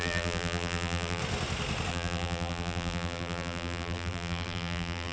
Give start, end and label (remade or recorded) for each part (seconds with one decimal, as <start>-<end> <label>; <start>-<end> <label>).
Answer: 0.0-1.2 remade; 1.2-1.9 recorded; 1.9-5.1 remade